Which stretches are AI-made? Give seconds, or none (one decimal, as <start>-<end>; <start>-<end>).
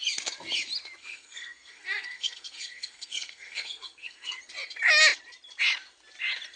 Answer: 1.0-4.4